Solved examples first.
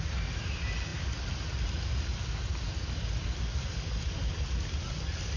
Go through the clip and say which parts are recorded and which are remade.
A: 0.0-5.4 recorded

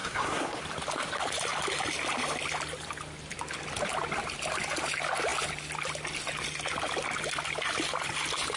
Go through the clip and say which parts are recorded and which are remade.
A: 0.0-0.6 remade; 0.6-8.6 recorded

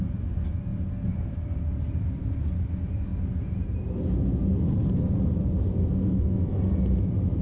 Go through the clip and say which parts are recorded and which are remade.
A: 0.0-6.0 recorded; 6.0-6.6 remade; 6.6-7.4 recorded

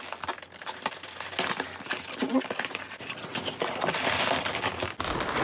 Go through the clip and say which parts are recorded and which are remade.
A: 0.0-5.4 recorded